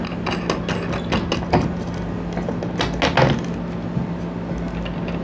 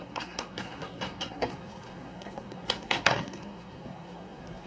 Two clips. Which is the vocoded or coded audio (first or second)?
second